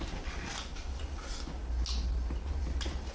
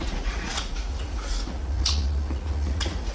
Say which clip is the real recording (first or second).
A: first